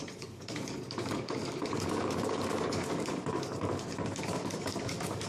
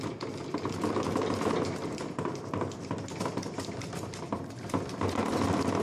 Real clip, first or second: second